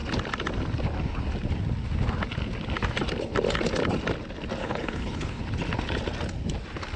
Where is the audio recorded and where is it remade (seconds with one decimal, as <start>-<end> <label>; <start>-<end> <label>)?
0.0-4.6 recorded; 4.6-5.4 remade; 5.4-7.0 recorded